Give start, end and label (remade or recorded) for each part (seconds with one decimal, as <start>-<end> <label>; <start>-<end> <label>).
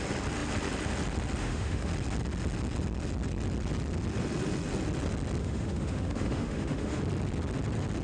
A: 0.0-1.4 recorded; 1.4-1.9 remade; 1.9-5.4 recorded; 5.4-7.0 remade; 7.0-8.0 recorded